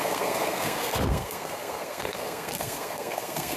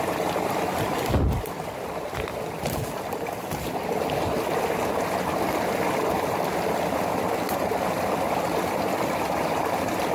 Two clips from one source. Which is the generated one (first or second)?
first